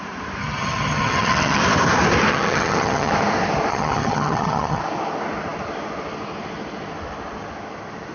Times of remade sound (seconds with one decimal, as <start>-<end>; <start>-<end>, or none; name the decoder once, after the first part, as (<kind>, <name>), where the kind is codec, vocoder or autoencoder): 0.4-1.6 (vocoder, HiFi-GAN); 2.3-3.1; 3.7-4.8